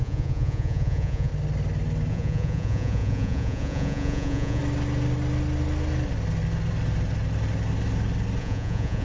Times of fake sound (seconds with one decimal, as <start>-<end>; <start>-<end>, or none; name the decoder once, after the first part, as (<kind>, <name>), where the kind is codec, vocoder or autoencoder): 0.0-1.3 (vocoder, Vocos); 2.1-4.6; 8.4-9.0